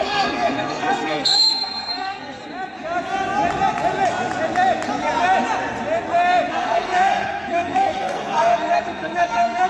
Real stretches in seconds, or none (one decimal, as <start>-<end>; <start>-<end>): 2.4-6.5